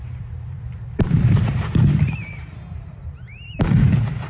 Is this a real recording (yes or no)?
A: no